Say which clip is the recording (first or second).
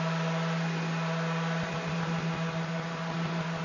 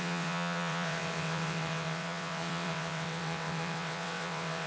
first